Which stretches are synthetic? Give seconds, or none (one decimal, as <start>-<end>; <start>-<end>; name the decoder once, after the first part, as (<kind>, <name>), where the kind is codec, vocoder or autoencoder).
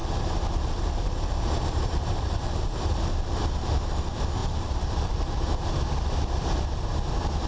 0.0-3.2 (vocoder, BigVGAN v2); 4.4-5.7